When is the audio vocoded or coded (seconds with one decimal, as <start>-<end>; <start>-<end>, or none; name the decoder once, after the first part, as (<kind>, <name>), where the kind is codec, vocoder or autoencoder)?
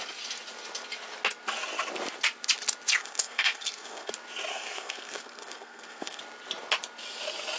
3.0-4.1 (codec, SNAC); 4.5-6.2